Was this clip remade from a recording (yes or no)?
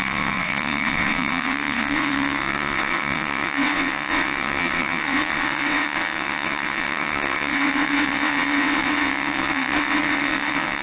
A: yes